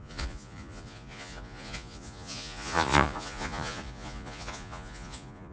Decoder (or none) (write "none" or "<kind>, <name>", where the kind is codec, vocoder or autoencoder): vocoder, Vocos